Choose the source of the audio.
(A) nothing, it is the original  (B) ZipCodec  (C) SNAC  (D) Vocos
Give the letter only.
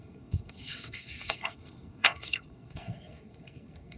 C